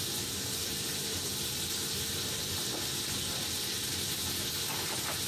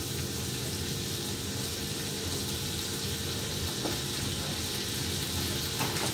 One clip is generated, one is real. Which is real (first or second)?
second